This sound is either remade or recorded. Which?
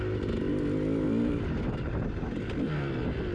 recorded